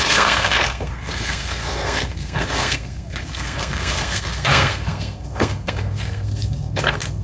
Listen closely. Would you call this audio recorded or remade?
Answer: remade